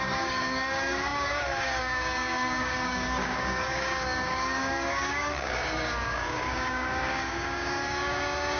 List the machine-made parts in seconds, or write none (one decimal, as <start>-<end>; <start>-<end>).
0.0-8.6

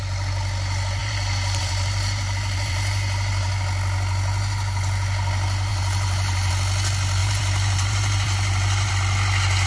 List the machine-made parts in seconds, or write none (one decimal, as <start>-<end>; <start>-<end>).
1.0-3.5; 5.7-6.5; 7.2-8.9

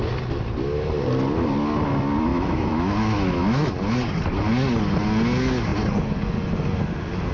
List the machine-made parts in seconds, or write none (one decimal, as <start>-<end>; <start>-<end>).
2.3-3.7